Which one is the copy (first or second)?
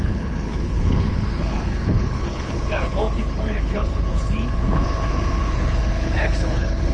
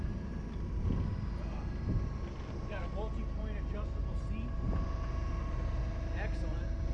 first